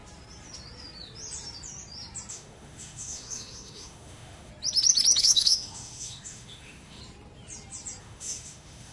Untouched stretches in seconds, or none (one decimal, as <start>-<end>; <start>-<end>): 0.0-2.3; 4.5-5.2; 7.0-8.0